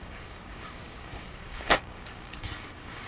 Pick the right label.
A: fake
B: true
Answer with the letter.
A